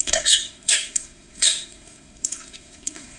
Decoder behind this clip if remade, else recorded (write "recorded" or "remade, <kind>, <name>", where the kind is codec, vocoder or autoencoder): remade, codec, SNAC